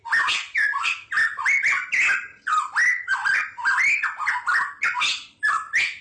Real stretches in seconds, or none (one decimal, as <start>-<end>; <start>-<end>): 0.0-6.0